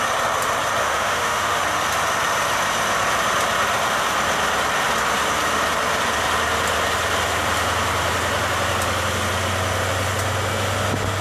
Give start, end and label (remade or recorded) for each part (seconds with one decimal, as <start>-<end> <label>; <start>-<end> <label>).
0.0-0.8 recorded; 0.8-1.6 remade; 1.6-11.2 recorded